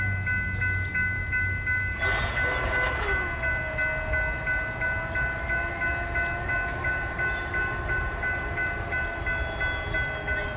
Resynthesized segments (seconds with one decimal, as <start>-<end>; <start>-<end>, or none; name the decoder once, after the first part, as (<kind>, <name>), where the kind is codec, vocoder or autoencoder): none